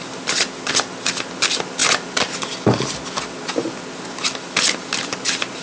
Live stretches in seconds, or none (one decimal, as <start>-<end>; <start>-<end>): 0.0-5.6